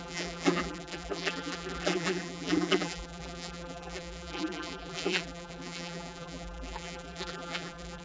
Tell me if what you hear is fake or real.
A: fake